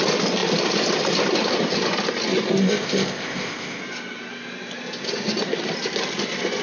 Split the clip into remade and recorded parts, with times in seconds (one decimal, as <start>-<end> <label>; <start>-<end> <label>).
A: 0.0-2.6 recorded; 2.6-3.8 remade; 3.8-6.6 recorded